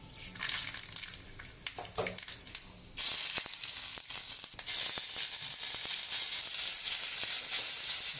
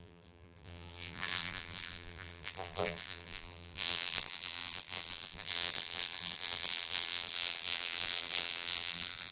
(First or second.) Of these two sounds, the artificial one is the second